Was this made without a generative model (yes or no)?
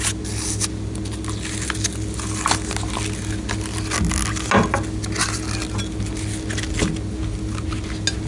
yes